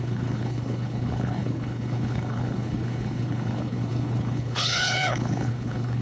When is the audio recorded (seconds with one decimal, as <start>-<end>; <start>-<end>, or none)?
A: none